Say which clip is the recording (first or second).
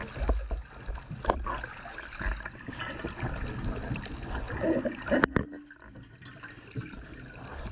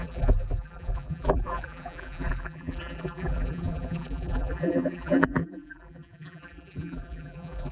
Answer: first